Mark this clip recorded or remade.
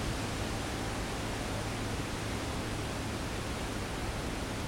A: recorded